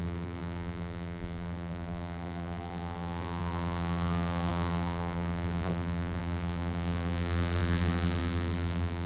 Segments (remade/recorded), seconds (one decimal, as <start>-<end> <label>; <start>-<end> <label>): 0.0-9.1 remade